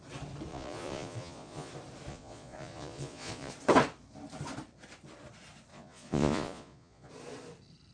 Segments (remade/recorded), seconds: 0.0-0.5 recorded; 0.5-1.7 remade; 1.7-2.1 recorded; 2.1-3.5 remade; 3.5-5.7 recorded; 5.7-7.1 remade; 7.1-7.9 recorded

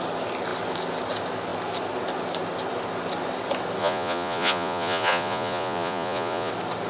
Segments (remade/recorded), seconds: 0.0-3.8 recorded; 3.8-6.5 remade; 6.5-6.9 recorded

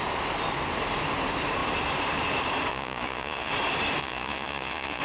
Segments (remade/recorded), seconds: 0.0-2.7 recorded; 2.7-3.5 remade; 3.5-4.0 recorded; 4.0-5.0 remade